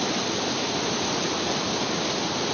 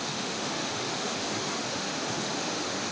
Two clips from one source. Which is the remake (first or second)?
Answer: second